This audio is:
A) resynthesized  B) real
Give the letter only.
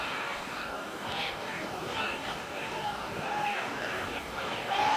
A